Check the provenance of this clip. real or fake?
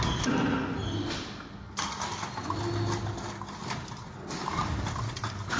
real